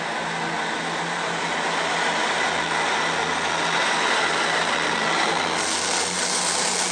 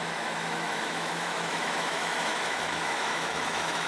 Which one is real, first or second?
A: first